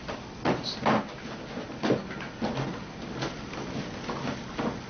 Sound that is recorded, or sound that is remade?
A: recorded